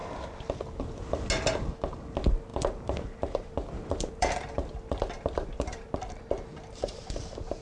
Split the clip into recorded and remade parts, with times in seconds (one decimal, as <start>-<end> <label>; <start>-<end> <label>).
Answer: 0.0-2.5 recorded; 2.5-7.1 remade; 7.1-7.6 recorded